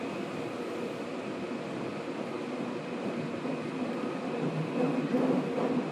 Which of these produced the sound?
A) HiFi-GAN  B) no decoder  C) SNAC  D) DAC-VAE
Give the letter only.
B